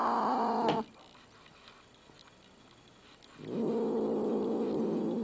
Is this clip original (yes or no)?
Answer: yes